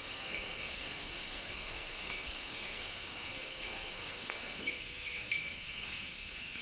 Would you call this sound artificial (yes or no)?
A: yes